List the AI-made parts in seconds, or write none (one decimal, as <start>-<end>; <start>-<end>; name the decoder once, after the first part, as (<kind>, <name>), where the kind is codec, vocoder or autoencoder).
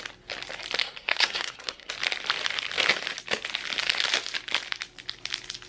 0.8-1.9 (codec, SNAC)